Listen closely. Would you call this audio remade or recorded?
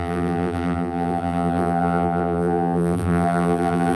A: remade